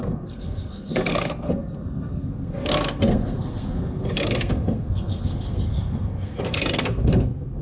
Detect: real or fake fake